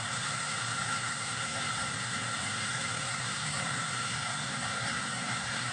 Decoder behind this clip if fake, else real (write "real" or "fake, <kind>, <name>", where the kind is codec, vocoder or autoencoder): fake, codec, SNAC